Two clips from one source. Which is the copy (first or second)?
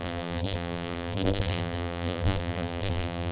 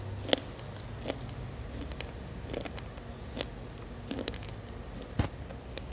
first